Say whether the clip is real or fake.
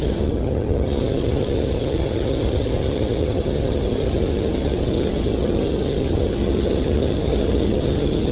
fake